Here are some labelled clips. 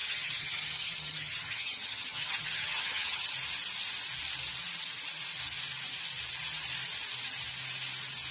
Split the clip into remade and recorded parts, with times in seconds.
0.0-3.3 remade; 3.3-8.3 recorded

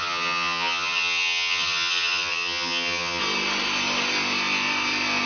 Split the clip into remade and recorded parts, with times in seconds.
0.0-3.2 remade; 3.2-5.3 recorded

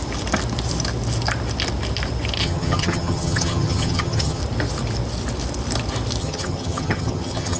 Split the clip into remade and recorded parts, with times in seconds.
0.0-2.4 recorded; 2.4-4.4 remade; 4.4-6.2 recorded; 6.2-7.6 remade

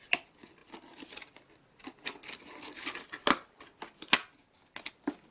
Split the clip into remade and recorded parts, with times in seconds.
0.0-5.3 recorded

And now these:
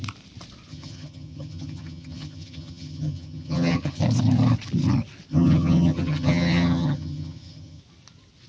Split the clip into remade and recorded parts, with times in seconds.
0.0-0.7 recorded; 0.7-4.0 remade; 4.0-5.3 recorded; 5.3-7.8 remade; 7.8-8.5 recorded